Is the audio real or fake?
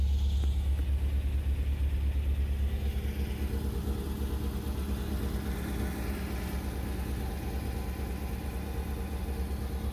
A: real